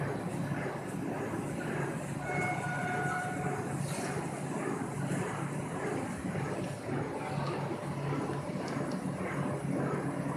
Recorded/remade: recorded